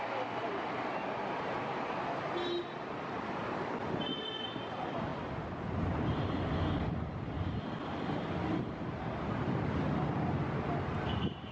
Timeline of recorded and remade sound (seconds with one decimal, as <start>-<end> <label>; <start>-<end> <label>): 0.0-11.5 recorded